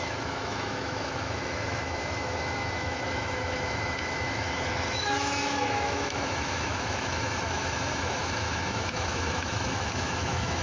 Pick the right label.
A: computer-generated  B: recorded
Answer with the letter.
A